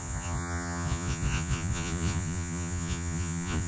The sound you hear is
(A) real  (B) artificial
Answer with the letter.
B